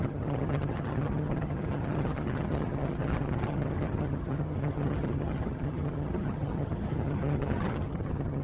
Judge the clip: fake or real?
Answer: fake